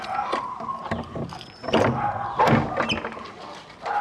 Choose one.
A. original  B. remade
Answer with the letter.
A